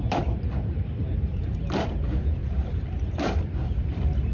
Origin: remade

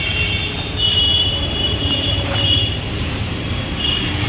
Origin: remade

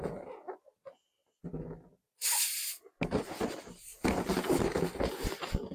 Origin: recorded